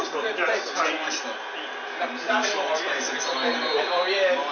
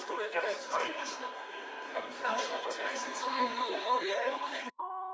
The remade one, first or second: second